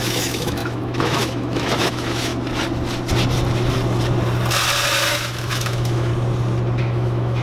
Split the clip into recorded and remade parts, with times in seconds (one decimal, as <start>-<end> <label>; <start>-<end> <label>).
0.0-2.3 remade; 2.3-5.1 recorded; 5.1-6.1 remade; 6.1-6.8 recorded; 6.8-7.4 remade